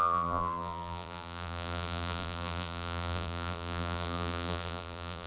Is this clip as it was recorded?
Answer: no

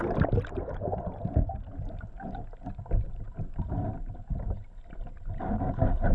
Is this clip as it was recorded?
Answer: yes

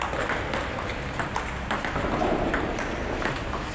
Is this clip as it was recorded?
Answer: yes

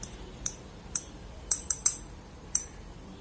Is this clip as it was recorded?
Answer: no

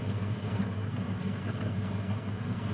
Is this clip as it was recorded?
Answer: no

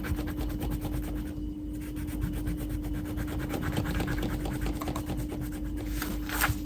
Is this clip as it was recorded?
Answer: yes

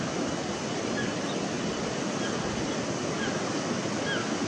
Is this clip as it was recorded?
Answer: yes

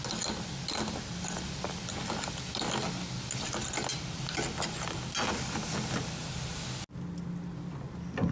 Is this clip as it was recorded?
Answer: yes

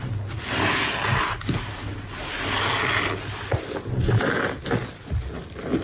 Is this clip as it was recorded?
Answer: yes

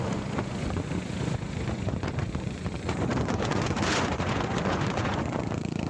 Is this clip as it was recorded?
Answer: no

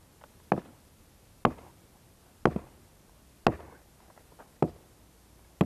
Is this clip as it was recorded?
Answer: yes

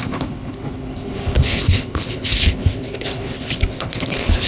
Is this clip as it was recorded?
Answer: no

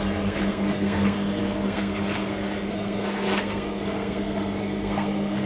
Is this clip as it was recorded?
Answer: no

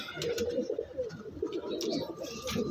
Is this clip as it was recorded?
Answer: yes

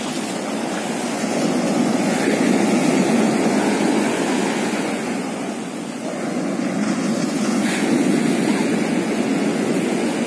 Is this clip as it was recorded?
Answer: no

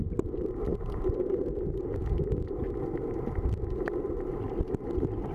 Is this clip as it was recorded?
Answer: yes